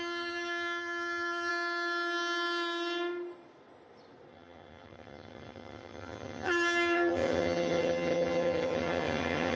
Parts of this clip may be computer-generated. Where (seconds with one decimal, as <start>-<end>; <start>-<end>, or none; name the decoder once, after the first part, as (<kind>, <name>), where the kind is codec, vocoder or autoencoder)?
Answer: 0.0-1.5 (vocoder, HiFi-GAN); 4.3-9.6